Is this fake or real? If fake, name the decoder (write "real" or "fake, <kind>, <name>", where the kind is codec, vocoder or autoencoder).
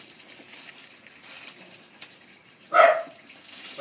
real